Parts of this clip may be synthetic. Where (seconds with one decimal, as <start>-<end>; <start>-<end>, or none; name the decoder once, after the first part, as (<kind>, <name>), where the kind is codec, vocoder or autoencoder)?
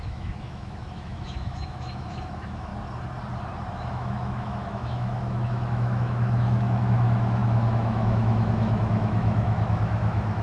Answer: 0.0-2.7 (autoencoder, DAC-VAE); 3.7-10.4